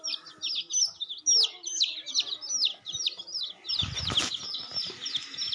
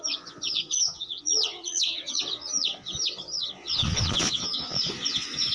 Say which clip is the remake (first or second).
second